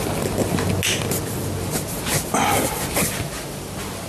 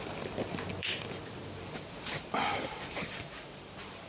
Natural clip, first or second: first